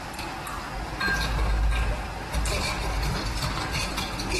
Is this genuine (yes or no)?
yes